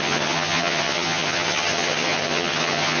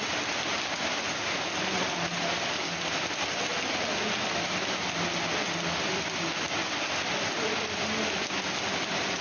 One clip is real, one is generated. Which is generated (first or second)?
first